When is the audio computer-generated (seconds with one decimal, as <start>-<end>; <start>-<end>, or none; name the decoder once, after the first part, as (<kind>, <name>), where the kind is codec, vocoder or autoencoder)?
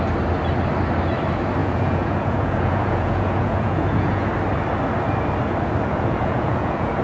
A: 1.6-4.3 (vocoder, Vocos); 5.9-7.0